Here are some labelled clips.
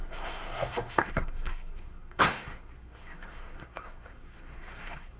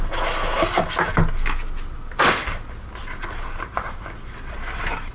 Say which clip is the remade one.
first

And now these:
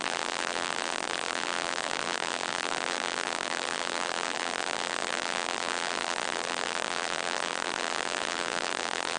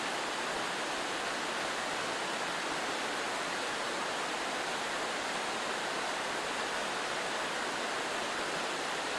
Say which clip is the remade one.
first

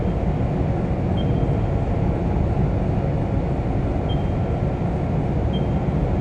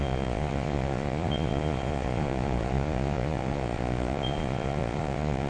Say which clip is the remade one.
second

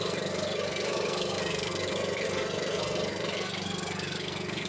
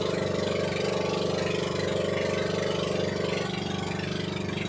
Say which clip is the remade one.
first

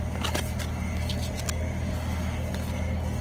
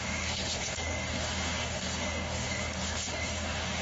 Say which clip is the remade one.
second